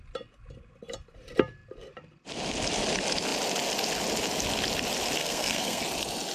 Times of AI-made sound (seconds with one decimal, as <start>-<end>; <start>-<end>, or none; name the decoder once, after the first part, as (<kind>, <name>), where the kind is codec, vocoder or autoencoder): 5.2-5.8 (codec, SNAC)